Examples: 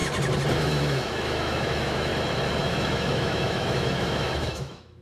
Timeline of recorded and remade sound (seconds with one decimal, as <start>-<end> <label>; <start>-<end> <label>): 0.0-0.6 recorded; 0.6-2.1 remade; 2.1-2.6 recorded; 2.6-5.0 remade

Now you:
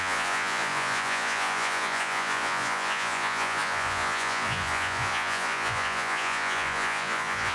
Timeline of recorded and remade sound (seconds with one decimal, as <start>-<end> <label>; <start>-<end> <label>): 0.0-7.5 remade

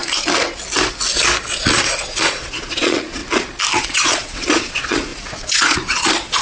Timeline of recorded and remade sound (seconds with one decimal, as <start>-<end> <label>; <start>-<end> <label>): 0.0-1.5 recorded; 1.5-3.2 remade; 3.2-3.8 recorded; 3.8-6.4 remade

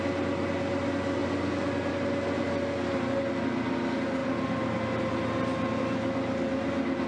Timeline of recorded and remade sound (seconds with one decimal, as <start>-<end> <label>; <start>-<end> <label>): 0.0-7.1 recorded

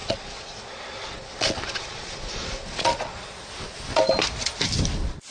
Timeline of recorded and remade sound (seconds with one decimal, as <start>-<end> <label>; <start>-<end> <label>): 0.0-3.2 remade; 3.2-5.3 recorded

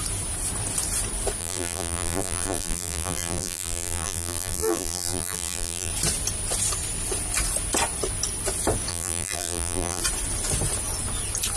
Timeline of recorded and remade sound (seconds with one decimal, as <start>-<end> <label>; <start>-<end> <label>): 0.0-1.4 recorded; 1.4-5.9 remade; 5.9-8.9 recorded; 8.9-10.0 remade; 10.0-11.6 recorded